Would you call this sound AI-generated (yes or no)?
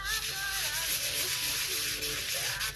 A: no